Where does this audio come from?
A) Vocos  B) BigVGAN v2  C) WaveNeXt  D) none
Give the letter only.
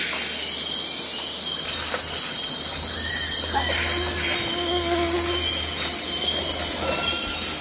D